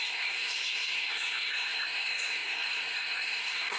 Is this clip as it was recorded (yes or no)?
no